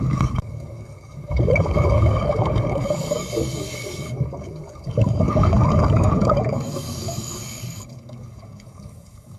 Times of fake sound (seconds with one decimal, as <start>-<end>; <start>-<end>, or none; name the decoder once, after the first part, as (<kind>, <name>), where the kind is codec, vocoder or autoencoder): 0.0-9.4 (codec, DAC)